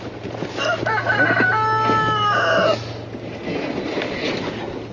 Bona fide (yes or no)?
yes